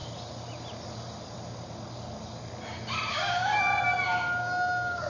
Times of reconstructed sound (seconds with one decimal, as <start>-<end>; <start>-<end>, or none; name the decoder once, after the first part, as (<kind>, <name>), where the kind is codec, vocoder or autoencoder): 3.1-3.5 (codec, DAC); 4.4-5.1